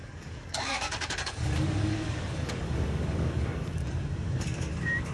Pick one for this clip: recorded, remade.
remade